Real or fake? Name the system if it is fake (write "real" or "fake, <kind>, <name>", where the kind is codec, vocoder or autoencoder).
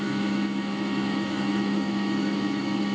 fake, autoencoder, DAC-VAE